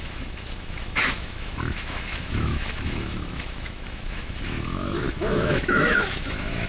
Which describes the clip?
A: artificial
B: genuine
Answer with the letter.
A